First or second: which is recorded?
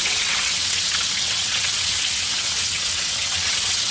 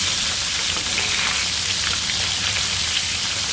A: second